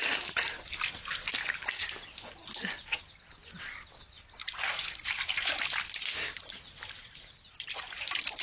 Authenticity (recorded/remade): recorded